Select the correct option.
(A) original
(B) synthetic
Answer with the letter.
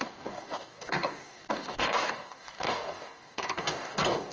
B